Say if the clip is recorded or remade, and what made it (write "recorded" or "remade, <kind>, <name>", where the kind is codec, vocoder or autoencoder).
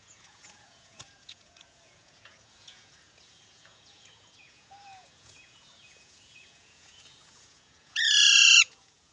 remade, vocoder, Vocos